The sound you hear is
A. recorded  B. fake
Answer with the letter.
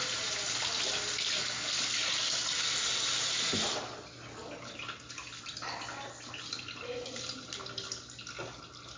A